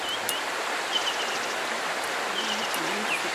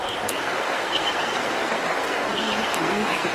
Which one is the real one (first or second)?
first